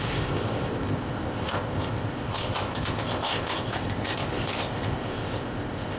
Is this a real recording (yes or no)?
no